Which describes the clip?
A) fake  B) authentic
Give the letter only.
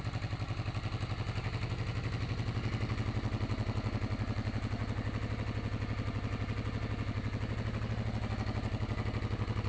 B